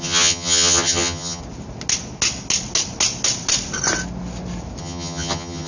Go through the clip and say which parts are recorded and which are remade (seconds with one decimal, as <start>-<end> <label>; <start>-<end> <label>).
0.0-1.4 remade; 1.4-4.8 recorded; 4.8-5.7 remade